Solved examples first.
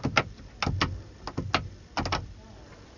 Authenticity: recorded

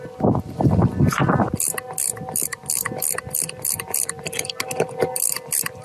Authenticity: recorded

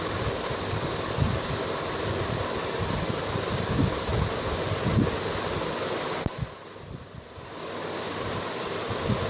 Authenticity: recorded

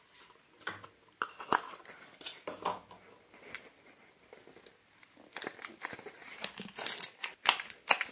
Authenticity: recorded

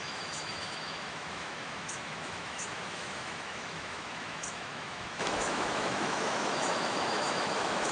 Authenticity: remade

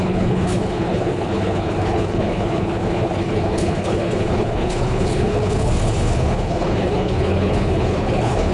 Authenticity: remade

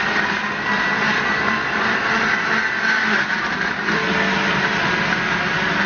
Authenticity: recorded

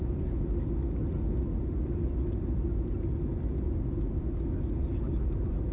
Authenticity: recorded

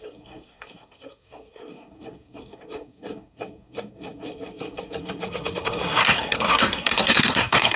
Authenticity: remade